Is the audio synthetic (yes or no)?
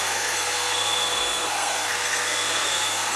yes